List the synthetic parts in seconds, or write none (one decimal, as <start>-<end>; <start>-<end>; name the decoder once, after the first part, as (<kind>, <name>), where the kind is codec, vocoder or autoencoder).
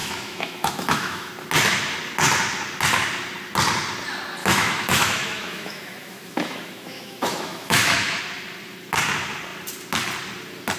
0.0-1.3 (autoencoder, DAC-VAE); 4.4-8.2